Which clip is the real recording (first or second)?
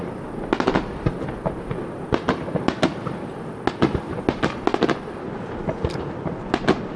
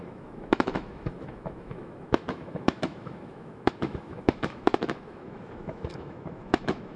first